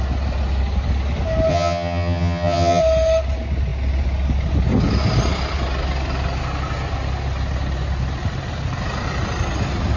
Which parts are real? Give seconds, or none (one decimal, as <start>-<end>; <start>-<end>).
0.0-1.5; 2.8-10.0

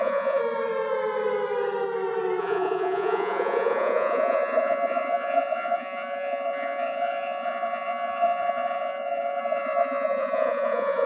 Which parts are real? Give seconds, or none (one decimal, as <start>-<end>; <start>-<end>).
0.4-2.4

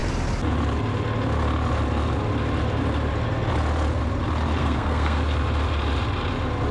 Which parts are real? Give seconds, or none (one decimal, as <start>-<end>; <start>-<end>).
0.0-4.6; 5.2-6.7

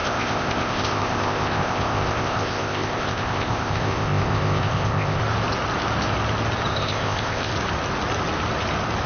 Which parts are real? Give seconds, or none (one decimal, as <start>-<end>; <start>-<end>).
5.2-6.7; 7.5-9.1

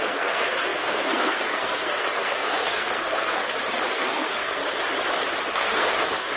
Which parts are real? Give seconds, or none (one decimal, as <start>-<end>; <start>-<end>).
3.4-3.9; 4.6-5.5

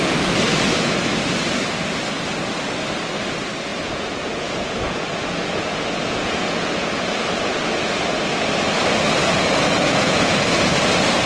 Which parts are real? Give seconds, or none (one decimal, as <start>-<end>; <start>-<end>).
0.0-3.7; 8.2-9.2; 10.3-11.3

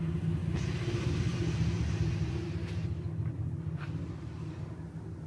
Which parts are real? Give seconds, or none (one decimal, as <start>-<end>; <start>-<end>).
0.0-5.3